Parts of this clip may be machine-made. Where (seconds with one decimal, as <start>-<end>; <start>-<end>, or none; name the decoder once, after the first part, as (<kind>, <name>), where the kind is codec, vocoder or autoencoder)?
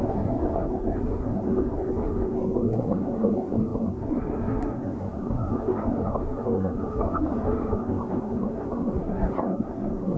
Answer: 0.0-10.2 (codec, SNAC)